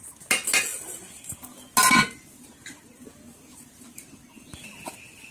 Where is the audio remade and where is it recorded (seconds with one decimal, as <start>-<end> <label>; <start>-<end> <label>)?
0.0-5.3 recorded